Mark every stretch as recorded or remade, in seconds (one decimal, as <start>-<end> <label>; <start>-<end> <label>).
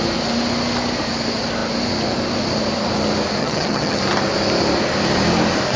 0.0-3.4 recorded; 3.4-4.0 remade; 4.0-5.8 recorded